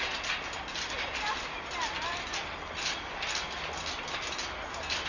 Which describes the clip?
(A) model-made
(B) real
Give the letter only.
B